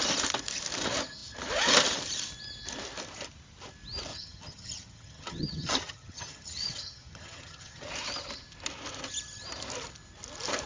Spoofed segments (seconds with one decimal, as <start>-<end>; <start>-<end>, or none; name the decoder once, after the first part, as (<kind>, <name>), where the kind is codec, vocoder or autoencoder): 4.1-7.9 (vocoder, HiFi-GAN)